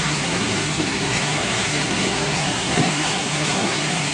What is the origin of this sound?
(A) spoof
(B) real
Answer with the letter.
A